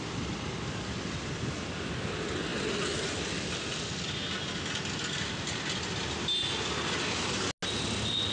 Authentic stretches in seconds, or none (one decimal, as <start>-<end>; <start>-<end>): 0.0-8.3